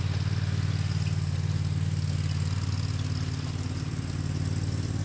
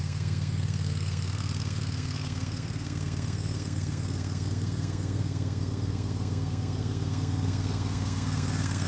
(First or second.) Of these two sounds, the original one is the first